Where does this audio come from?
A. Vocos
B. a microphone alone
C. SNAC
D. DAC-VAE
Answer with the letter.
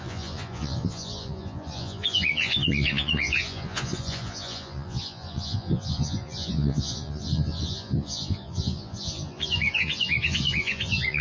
A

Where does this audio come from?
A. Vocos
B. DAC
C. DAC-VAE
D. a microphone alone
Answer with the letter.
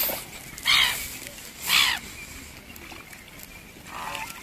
D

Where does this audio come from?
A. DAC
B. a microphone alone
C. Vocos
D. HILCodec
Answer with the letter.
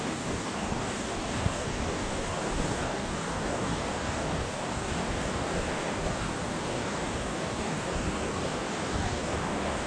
A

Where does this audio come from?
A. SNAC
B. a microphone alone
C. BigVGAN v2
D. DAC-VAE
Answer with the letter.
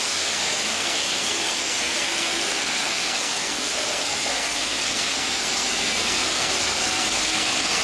A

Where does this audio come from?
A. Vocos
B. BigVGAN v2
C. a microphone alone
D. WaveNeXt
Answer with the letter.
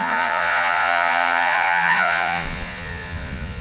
A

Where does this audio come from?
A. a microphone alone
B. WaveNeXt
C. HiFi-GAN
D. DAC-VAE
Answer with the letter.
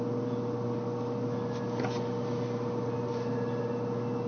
A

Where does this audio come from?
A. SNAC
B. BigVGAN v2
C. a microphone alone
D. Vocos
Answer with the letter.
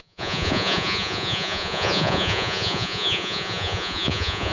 D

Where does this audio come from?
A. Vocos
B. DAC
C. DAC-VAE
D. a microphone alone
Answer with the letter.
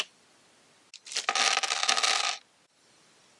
D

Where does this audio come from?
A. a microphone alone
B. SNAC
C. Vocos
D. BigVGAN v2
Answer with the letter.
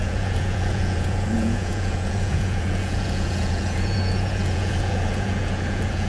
C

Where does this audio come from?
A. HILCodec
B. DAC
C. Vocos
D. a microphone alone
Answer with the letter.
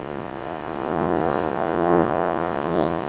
C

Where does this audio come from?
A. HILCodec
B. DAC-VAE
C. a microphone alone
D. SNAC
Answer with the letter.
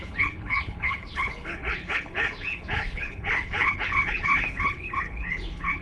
A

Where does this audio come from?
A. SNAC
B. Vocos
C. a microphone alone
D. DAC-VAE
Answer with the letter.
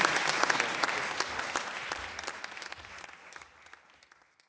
C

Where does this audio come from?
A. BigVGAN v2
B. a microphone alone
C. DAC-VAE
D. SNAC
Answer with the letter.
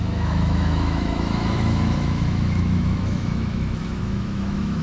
C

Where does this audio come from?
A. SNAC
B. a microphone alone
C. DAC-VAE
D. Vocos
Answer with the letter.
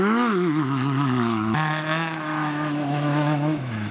C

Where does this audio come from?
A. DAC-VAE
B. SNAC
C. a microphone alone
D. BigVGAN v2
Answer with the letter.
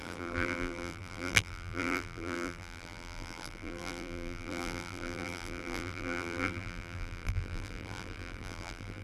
D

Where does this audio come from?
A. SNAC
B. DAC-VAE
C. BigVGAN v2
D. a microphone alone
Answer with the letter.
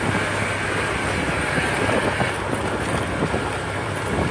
D